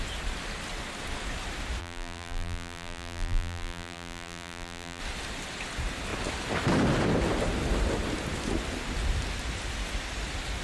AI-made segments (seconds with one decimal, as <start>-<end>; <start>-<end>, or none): 1.8-5.0